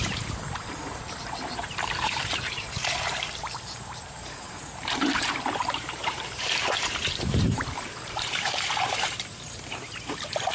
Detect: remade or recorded remade